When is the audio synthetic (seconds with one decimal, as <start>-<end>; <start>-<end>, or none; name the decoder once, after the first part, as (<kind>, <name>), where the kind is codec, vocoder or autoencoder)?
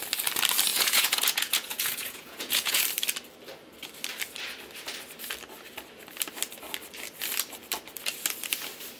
0.7-2.8 (vocoder, Vocos)